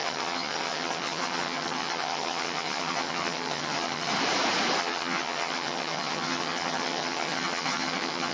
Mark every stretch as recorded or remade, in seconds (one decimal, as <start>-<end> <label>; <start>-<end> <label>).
0.0-4.1 remade; 4.1-4.8 recorded; 4.8-8.3 remade